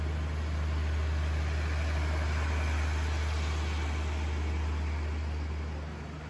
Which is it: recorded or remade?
recorded